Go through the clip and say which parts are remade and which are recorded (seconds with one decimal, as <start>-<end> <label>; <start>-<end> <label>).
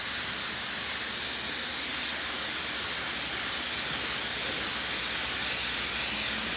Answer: 0.0-6.6 recorded